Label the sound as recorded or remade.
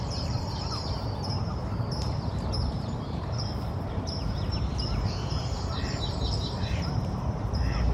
remade